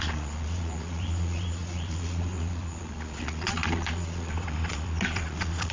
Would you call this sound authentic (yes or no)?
no